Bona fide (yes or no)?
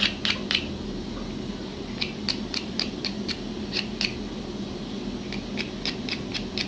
yes